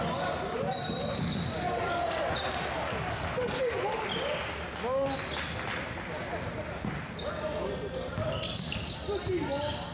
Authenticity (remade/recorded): recorded